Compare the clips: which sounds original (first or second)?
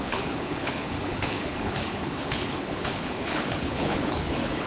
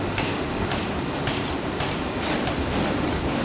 second